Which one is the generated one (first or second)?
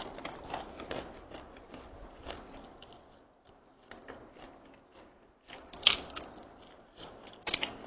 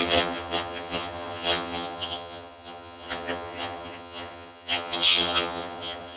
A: second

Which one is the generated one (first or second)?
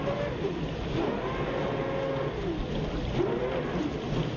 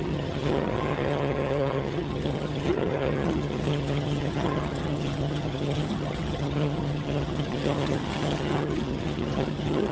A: second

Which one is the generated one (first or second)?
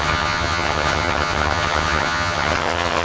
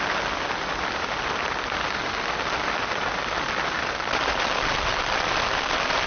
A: first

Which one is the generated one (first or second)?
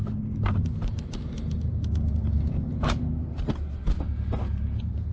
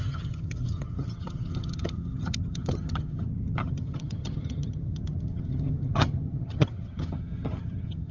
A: second